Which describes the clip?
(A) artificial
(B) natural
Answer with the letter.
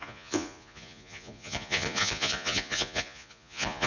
A